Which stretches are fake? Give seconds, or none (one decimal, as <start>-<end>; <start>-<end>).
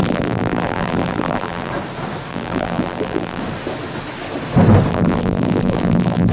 0.0-1.7; 2.3-3.4; 4.9-6.3